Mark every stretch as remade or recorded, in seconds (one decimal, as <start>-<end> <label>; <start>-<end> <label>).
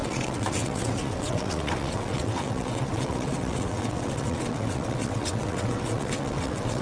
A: 0.0-6.8 remade